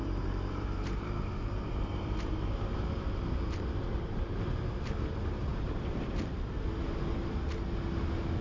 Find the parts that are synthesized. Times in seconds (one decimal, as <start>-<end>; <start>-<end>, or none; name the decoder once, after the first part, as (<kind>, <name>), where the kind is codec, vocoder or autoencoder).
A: 0.0-4.9 (vocoder, BigVGAN v2); 5.5-6.3